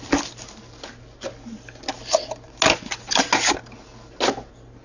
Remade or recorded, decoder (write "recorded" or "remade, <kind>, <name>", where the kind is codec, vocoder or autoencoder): recorded